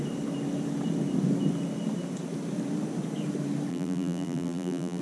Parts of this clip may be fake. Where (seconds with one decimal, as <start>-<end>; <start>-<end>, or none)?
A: 3.7-5.0